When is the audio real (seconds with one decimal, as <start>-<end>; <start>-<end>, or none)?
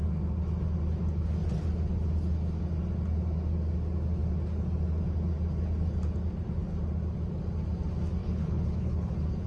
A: 0.0-8.2; 9.1-9.5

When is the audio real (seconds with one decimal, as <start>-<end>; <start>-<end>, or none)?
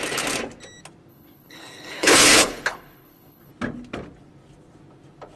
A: 0.0-1.1; 3.5-5.4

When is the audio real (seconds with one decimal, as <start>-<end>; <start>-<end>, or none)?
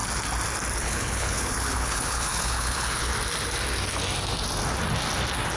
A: 0.0-0.8; 3.1-5.6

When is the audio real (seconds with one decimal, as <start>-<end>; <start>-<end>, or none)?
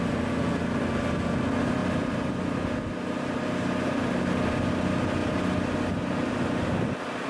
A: 0.0-7.3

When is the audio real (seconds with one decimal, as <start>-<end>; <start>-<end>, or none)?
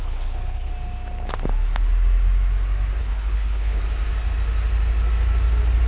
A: 0.7-3.0; 3.8-5.9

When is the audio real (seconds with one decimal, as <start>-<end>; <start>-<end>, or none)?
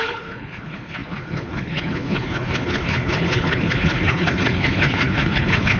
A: none